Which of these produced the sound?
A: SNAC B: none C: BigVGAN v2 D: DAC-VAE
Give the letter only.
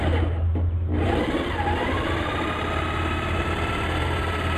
C